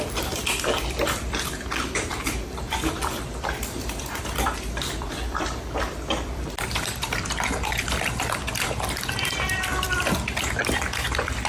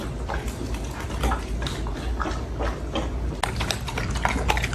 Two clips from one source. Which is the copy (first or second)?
first